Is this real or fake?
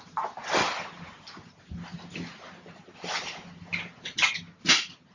real